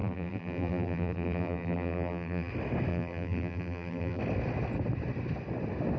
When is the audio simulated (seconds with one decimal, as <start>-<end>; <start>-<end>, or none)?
0.0-2.5; 2.9-4.2